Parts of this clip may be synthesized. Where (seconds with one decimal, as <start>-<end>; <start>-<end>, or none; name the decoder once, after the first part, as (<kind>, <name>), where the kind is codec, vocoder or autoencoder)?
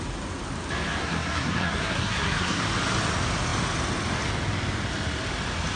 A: 1.0-2.6 (codec, SNAC)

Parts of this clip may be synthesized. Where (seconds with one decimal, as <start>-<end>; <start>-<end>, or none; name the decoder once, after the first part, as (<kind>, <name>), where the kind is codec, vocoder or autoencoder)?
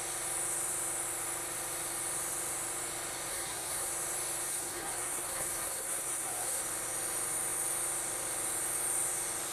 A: 3.3-3.9 (codec, SNAC); 4.5-6.6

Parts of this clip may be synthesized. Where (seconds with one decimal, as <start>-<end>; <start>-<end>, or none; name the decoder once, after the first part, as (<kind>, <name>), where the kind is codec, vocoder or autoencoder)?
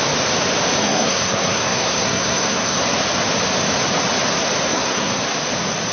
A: 0.8-2.8 (codec, SNAC); 4.7-5.2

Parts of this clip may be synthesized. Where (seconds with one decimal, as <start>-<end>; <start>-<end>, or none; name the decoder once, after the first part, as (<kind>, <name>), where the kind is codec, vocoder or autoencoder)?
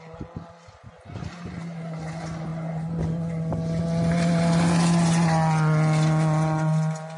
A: none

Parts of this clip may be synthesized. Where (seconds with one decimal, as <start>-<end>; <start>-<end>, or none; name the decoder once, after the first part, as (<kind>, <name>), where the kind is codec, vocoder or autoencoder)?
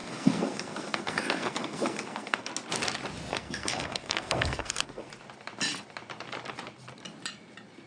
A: 0.0-2.5 (codec, SNAC); 3.3-5.1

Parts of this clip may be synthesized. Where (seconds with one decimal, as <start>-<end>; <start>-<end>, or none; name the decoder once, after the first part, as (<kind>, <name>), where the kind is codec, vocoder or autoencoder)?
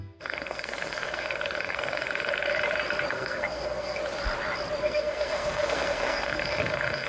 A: 0.0-2.5 (codec, SNAC); 3.1-4.0; 4.8-7.1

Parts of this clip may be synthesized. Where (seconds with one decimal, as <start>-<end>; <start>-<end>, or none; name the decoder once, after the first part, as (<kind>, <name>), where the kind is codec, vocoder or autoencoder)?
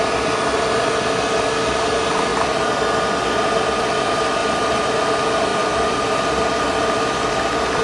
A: none